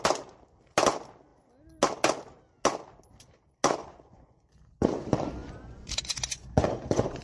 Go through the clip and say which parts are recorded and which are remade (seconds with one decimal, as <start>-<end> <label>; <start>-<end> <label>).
0.0-3.8 recorded; 3.8-4.9 remade; 4.9-5.4 recorded; 5.4-7.2 remade